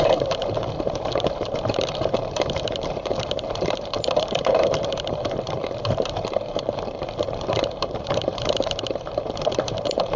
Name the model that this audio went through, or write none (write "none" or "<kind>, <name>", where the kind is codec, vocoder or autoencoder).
vocoder, BigVGAN v2